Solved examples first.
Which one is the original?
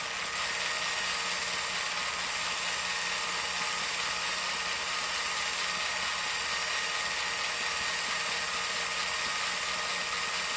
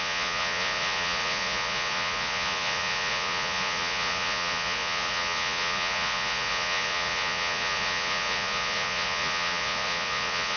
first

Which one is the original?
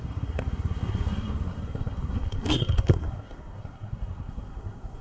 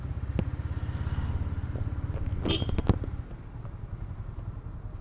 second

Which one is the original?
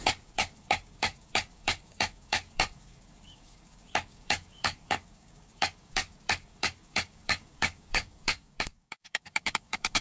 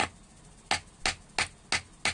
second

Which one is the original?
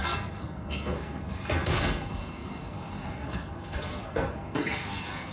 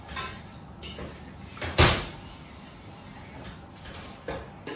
second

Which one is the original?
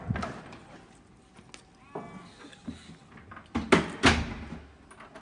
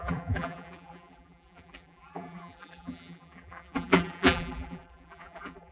first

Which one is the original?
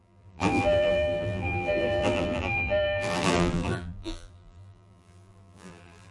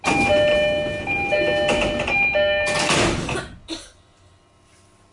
second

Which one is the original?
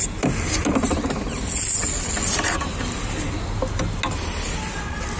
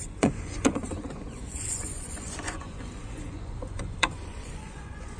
first